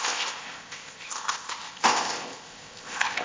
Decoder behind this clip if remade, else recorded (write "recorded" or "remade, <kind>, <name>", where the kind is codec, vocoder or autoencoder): remade, codec, ZipCodec